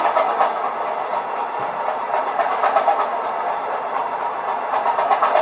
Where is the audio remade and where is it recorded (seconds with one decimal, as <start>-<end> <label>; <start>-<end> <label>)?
0.0-1.1 recorded; 1.1-2.5 remade; 2.5-3.1 recorded; 3.1-5.4 remade